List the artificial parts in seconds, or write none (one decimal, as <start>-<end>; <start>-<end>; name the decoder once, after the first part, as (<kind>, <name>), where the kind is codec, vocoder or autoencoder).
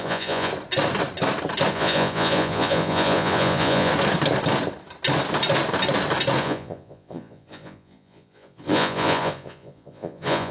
0.0-0.5 (vocoder, Vocos); 1.7-3.9; 6.4-10.5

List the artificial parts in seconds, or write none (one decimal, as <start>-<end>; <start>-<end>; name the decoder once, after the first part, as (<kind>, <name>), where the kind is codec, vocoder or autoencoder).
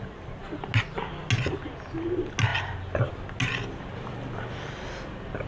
none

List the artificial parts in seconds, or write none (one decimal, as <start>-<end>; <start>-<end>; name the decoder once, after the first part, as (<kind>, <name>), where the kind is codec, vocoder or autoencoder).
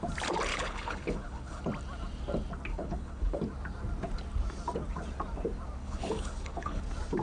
0.5-1.6 (codec, HILCodec); 2.7-3.4; 5.8-6.8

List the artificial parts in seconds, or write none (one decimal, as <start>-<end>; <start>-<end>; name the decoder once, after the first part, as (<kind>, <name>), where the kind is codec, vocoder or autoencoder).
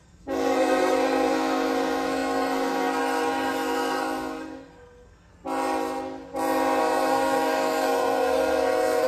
0.0-5.3 (codec, SNAC); 6.8-9.1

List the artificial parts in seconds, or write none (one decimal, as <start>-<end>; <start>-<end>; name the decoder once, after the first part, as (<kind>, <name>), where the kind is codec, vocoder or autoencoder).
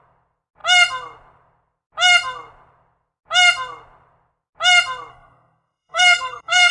5.1-6.7 (codec, SNAC)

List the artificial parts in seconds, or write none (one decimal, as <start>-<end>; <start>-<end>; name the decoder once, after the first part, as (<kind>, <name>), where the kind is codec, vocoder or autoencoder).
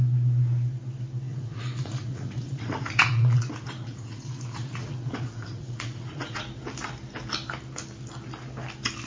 1.3-6.4 (vocoder, Vocos)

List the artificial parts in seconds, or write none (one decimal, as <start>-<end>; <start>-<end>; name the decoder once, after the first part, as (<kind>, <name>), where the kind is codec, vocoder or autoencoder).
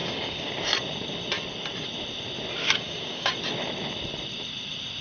0.0-0.5 (codec, DAC); 2.6-3.3